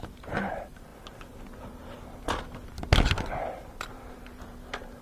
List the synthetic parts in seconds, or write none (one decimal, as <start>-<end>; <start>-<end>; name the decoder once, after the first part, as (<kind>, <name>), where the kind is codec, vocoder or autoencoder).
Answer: 0.0-0.9 (vocoder, BigVGAN v2); 3.9-5.0